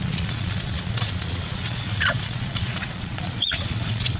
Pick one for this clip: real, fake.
fake